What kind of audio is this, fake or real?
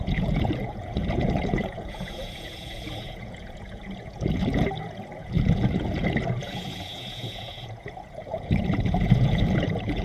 fake